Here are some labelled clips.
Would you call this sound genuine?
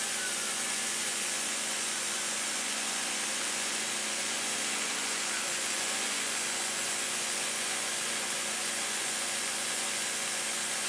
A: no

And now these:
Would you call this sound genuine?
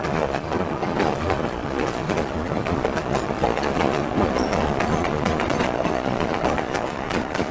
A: no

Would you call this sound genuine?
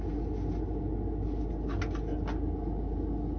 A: yes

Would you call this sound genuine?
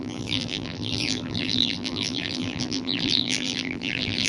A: no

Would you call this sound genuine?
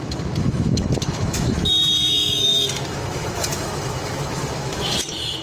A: no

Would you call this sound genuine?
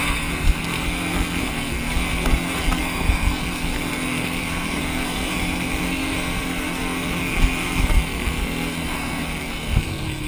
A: no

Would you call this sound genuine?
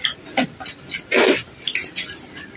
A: yes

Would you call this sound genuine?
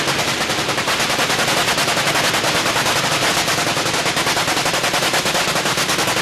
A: yes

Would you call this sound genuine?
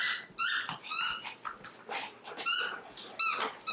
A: yes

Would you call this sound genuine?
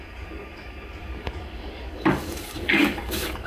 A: no